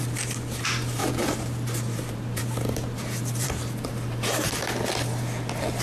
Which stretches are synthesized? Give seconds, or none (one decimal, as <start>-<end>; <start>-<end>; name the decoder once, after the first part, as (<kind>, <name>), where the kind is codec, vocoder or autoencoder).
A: 1.0-4.5 (vocoder, BigVGAN v2)